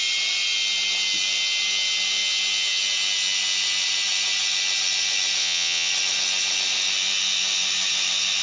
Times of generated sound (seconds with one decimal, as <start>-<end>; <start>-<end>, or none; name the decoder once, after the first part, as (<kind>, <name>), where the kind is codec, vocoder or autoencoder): 5.4-5.9 (vocoder, WaveNeXt)